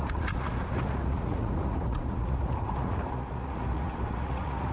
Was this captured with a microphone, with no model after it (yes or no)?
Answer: no